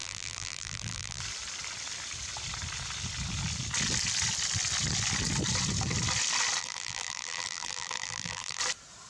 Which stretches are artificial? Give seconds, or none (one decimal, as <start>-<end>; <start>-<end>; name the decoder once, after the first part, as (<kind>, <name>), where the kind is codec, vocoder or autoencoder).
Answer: 0.0-1.2 (vocoder, BigVGAN v2); 6.6-8.6